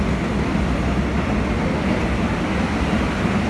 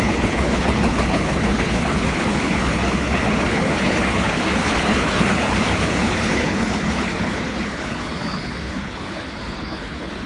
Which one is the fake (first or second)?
second